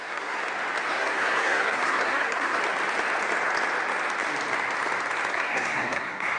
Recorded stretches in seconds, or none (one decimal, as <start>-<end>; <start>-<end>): 0.4-0.9; 2.6-5.3